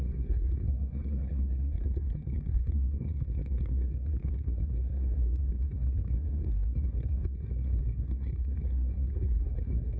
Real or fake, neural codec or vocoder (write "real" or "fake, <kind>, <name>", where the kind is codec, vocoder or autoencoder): fake, codec, SNAC